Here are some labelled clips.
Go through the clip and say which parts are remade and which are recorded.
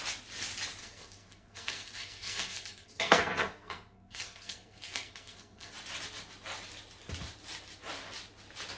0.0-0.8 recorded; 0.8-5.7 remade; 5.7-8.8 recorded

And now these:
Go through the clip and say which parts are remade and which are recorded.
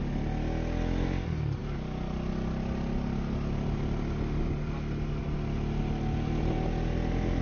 0.0-7.4 recorded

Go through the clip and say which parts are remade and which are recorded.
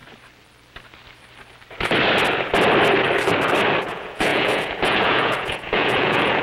0.0-3.8 recorded; 3.8-6.4 remade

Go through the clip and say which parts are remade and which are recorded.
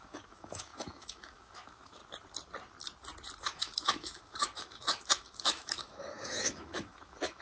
0.0-2.0 remade; 2.0-3.4 recorded; 3.4-7.4 remade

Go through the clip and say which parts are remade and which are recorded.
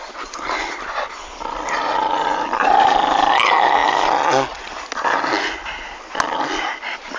0.0-7.2 recorded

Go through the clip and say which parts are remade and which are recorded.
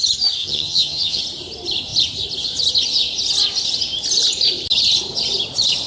0.0-0.4 recorded; 0.4-1.2 remade; 1.2-5.9 recorded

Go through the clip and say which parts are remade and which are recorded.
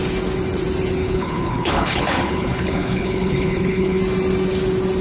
0.0-1.0 recorded; 1.0-4.0 remade; 4.0-5.0 recorded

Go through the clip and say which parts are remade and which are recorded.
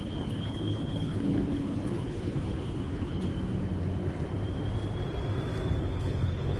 0.0-3.3 remade; 3.3-5.8 recorded; 5.8-6.6 remade